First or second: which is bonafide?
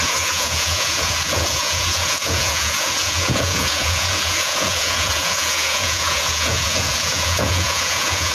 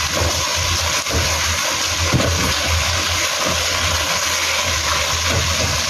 second